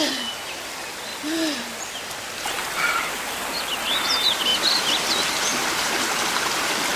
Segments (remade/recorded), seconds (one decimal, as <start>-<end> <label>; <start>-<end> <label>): 0.0-2.6 recorded; 2.6-3.3 remade; 3.3-4.5 recorded; 4.5-5.7 remade; 5.7-7.0 recorded